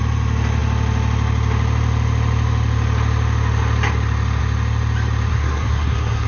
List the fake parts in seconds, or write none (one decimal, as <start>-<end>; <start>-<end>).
5.3-6.3